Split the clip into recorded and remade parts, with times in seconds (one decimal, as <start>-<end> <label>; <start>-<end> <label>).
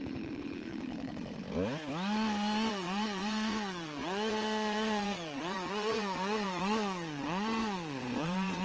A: 0.0-1.4 remade; 1.4-2.7 recorded; 2.7-8.6 remade